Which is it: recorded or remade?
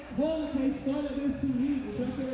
remade